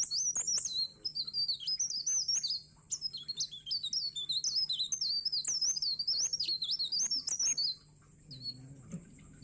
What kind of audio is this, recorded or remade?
recorded